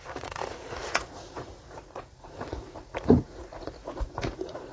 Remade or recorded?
remade